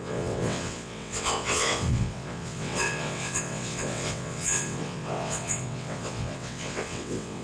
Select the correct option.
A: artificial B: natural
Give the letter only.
A